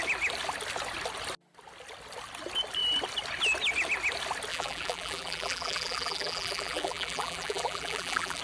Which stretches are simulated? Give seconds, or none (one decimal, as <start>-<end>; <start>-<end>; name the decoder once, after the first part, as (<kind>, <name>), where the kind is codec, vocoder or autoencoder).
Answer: 4.5-8.4 (vocoder, BigVGAN v2)